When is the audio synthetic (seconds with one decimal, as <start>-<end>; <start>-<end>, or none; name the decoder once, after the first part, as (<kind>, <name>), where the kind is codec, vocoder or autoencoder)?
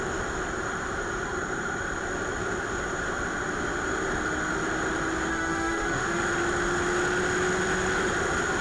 5.3-6.2 (autoencoder, DAC-VAE)